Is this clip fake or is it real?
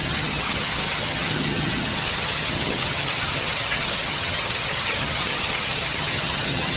fake